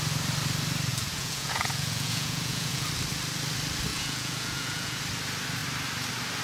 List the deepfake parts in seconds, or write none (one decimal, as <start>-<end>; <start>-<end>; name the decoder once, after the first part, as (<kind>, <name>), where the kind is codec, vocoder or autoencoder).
0.9-2.9 (vocoder, Vocos); 3.9-5.0